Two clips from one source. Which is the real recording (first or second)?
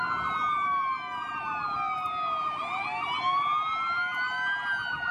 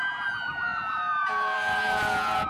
first